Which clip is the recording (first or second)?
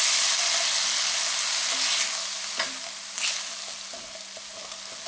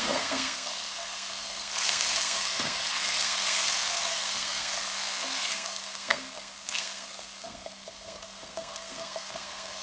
first